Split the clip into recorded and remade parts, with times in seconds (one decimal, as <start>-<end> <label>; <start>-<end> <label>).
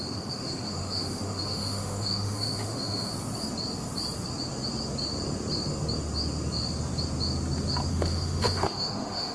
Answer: 0.0-3.1 remade; 3.1-7.9 recorded; 7.9-9.3 remade